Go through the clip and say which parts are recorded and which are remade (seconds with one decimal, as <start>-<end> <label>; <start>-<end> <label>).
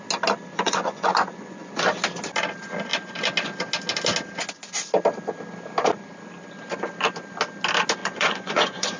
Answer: 0.0-0.5 recorded; 0.5-1.7 remade; 1.7-8.0 recorded; 8.0-9.0 remade